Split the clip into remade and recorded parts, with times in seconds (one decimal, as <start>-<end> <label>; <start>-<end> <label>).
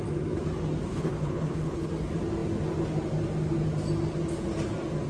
0.0-0.9 recorded; 0.9-1.9 remade; 1.9-5.1 recorded